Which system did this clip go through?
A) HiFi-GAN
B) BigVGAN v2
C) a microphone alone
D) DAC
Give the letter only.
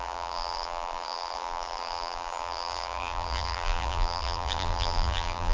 B